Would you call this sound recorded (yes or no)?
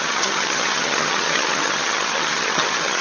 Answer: no